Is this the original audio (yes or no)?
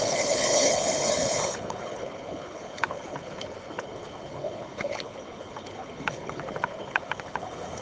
no